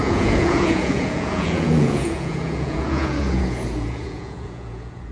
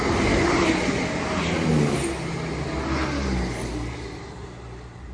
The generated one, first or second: first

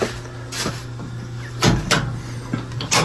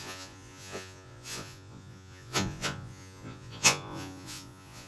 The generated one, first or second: second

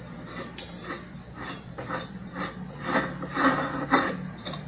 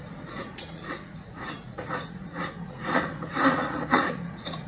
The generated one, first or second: second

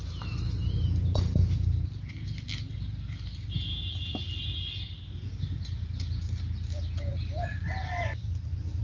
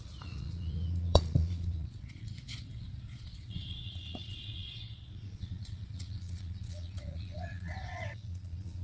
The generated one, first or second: second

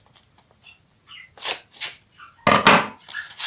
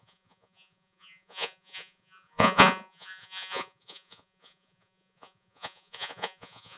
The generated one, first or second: second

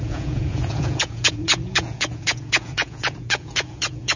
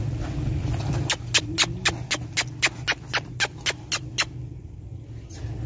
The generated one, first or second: first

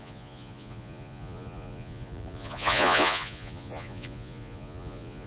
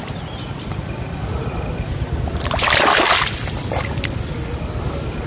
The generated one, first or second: first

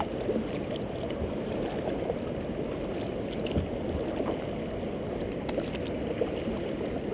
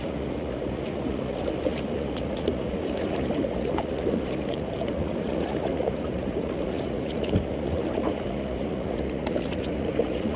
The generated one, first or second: second